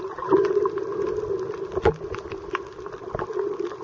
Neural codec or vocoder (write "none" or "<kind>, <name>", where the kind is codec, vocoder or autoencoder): none